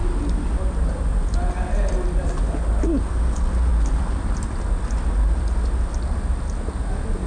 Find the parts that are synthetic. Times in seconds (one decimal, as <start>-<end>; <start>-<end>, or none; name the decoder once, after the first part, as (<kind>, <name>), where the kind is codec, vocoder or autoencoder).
none